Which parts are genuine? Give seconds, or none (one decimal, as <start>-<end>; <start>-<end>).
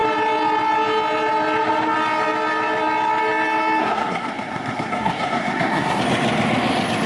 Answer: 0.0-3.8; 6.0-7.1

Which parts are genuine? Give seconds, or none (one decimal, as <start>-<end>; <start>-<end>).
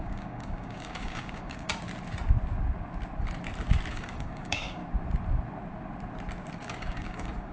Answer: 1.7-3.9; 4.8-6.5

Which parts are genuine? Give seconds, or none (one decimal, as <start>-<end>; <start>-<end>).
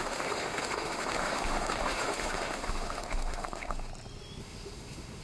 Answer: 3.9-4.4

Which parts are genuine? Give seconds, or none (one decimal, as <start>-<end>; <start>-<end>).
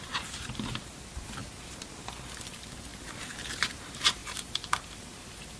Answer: 1.4-2.5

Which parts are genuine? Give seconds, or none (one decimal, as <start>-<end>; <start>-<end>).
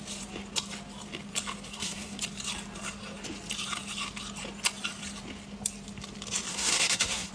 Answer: 0.0-1.7; 2.2-6.5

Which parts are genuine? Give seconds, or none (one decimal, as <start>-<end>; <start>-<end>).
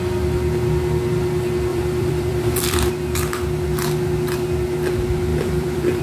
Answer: 0.0-1.7; 2.9-5.3